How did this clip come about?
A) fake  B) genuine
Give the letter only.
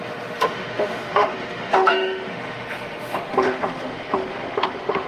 A